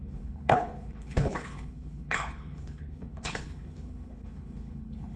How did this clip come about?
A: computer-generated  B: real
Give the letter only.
A